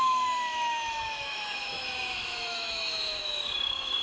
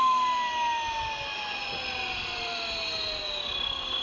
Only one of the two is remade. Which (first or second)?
first